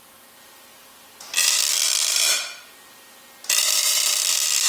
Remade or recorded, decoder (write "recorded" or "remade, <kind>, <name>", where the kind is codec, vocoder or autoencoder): recorded